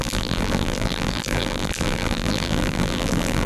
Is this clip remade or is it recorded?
remade